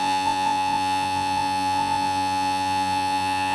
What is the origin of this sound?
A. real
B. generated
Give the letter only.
B